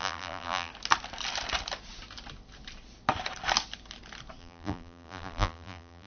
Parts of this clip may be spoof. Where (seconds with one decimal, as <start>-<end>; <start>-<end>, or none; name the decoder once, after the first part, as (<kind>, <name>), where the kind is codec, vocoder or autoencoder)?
0.0-0.7 (vocoder, BigVGAN v2); 4.4-6.1